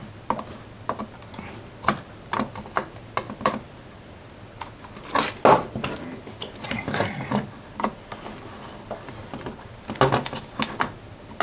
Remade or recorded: recorded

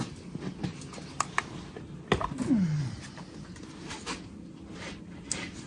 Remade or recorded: recorded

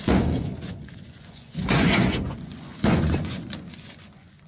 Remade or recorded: remade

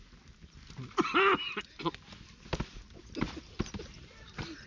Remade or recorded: recorded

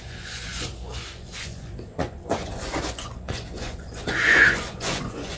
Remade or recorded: remade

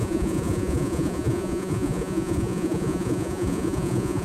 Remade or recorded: remade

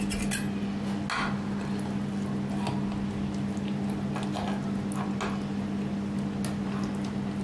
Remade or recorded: recorded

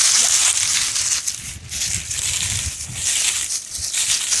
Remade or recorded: recorded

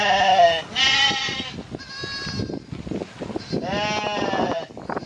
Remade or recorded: recorded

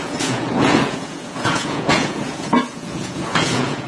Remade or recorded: remade